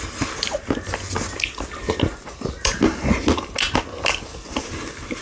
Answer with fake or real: real